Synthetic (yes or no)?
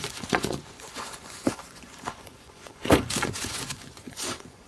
yes